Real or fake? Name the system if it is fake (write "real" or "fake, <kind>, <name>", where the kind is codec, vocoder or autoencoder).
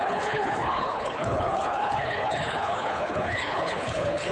fake, codec, HILCodec